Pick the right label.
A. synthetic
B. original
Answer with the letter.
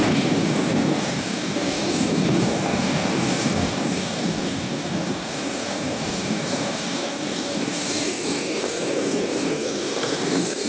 A